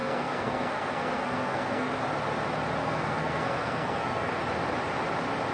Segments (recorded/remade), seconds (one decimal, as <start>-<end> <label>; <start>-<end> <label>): 0.0-1.9 remade; 1.9-2.8 recorded; 2.8-4.4 remade; 4.4-5.5 recorded